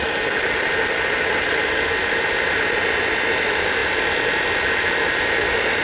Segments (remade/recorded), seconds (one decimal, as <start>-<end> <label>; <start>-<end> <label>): 0.0-5.8 recorded